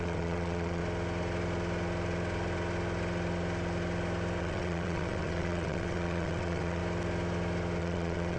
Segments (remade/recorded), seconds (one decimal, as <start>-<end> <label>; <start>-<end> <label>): 0.0-0.8 remade; 0.8-4.4 recorded; 4.4-6.8 remade; 6.8-7.8 recorded; 7.8-8.4 remade